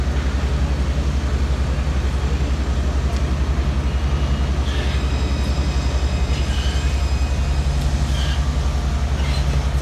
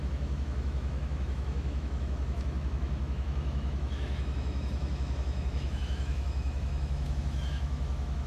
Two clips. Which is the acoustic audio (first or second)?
first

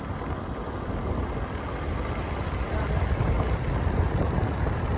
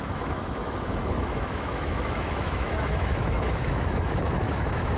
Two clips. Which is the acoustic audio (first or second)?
first